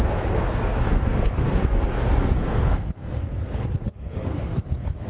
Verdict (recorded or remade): remade